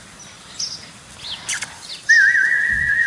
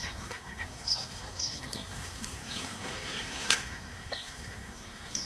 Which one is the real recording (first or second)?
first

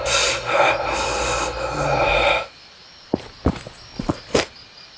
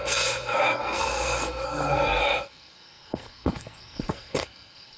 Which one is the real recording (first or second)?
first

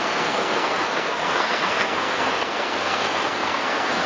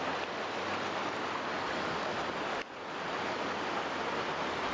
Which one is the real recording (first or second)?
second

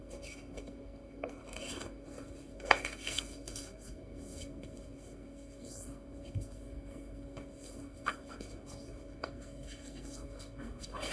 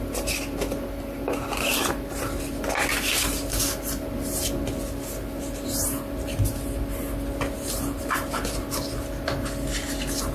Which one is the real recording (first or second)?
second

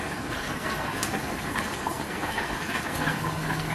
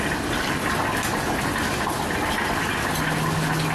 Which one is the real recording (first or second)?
second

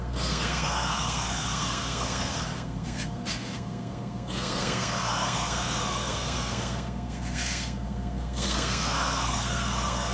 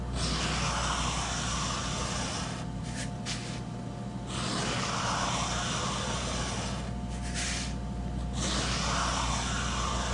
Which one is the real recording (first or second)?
second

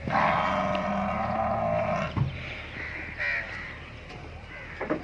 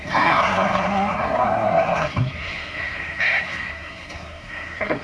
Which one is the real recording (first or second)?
first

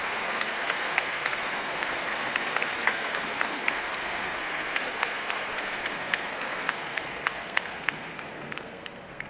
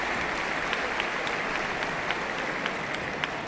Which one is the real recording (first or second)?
second